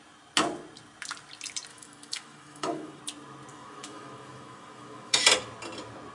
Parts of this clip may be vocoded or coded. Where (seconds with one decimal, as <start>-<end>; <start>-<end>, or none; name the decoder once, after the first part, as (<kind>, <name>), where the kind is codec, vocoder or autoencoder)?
1.7-3.0 (autoencoder, DAC-VAE); 3.5-5.2